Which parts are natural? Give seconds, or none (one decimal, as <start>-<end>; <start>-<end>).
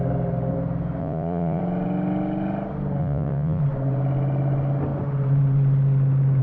0.0-1.0; 1.6-3.0; 3.6-6.4